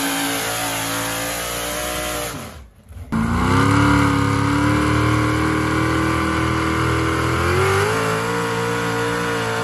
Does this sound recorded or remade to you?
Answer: recorded